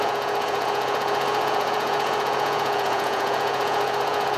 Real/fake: fake